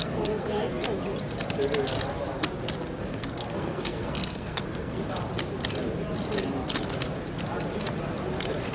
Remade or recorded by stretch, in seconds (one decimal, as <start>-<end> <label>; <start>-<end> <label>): 0.0-0.7 remade; 0.7-3.0 recorded; 3.0-5.0 remade; 5.0-8.7 recorded